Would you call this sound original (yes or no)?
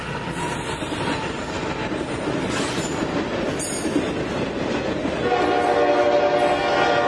yes